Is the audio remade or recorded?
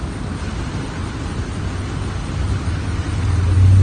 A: recorded